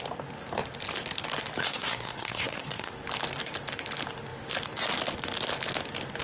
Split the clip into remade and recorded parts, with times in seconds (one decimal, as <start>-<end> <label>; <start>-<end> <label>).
0.0-1.6 recorded; 1.6-2.9 remade; 2.9-6.2 recorded